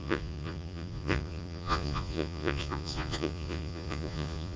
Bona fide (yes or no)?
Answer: no